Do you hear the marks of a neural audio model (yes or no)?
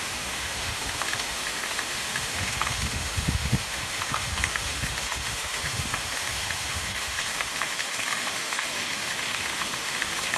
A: yes